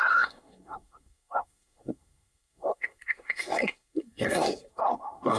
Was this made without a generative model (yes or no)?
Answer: no